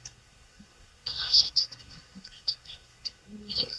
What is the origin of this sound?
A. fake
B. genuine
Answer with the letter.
A